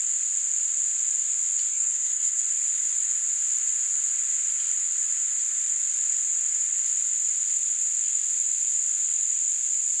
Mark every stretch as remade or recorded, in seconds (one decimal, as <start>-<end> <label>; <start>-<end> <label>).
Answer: 0.0-1.7 recorded; 1.7-2.4 remade; 2.4-10.0 recorded